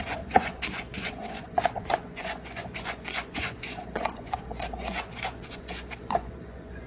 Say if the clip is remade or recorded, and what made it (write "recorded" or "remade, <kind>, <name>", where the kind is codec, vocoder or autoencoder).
remade, vocoder, Vocos